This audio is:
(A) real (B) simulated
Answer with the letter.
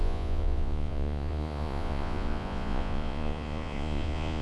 B